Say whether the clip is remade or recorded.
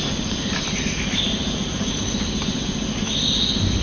recorded